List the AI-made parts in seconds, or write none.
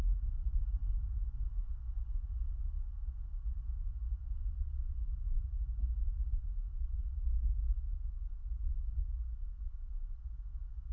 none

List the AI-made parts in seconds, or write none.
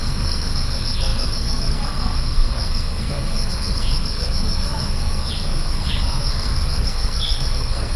0.0-8.0 (codec, SNAC)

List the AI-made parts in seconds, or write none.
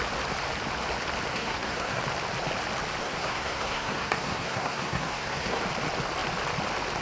1.3-2.0 (codec, SNAC); 3.0-5.6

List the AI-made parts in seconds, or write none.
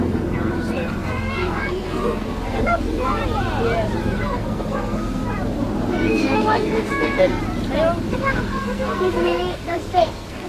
0.0-3.2 (codec, SNAC); 4.0-5.2; 5.9-7.4; 8.1-10.5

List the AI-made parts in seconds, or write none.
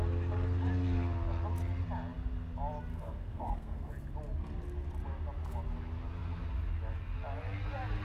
2.9-3.9 (codec, SNAC)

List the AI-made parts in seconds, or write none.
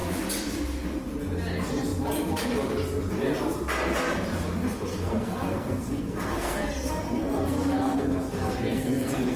4.9-9.4 (codec, SNAC)